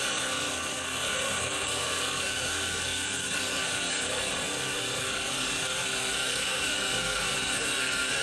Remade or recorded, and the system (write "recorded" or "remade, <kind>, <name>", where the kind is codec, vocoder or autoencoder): remade, codec, SNAC